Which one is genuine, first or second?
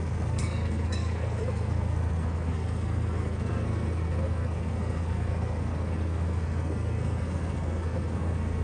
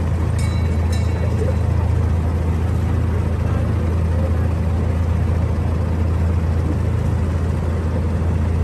second